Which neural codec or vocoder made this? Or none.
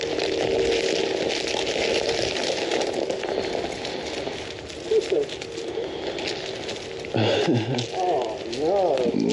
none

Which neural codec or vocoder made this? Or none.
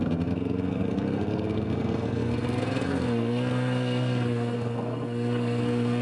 codec, SNAC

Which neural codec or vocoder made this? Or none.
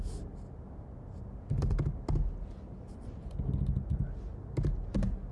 none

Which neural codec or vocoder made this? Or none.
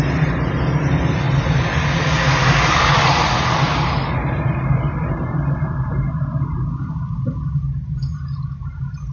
none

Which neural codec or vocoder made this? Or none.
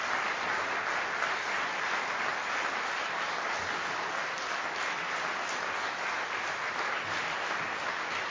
none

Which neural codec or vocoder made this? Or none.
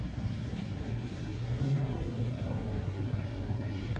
codec, SNAC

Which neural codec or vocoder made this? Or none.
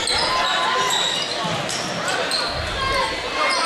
none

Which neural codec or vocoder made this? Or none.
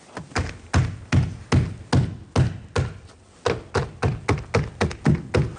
none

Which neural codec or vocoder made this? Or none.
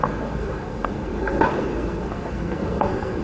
codec, SNAC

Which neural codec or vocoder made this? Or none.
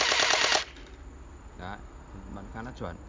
none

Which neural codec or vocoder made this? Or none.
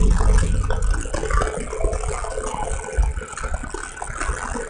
none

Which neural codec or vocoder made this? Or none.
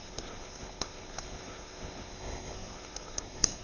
codec, SNAC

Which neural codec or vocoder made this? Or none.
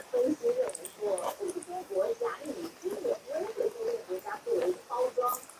none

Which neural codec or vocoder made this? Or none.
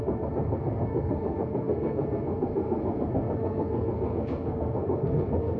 codec, SNAC